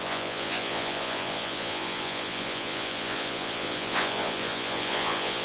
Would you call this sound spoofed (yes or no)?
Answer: yes